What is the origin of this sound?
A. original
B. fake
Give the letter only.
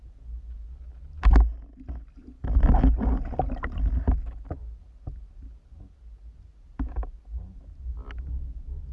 A